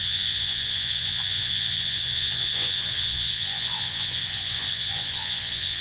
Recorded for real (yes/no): no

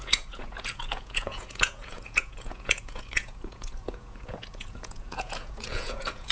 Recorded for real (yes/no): no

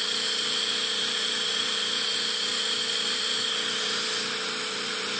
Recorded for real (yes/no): no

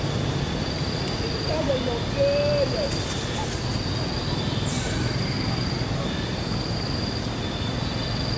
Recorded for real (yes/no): yes